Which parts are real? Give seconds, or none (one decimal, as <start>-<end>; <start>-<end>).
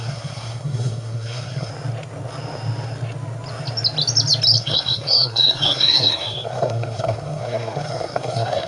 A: 1.7-4.6